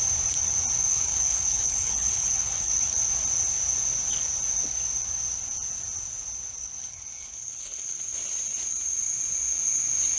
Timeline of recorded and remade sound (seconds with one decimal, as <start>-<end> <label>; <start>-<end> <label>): 0.0-0.9 recorded; 0.9-3.0 remade; 3.0-6.6 recorded; 6.6-8.0 remade; 8.0-10.2 recorded